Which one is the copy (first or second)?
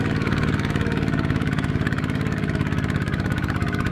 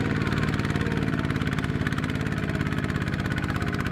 first